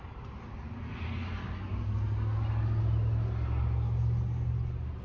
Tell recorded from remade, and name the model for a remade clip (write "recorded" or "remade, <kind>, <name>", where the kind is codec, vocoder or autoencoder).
recorded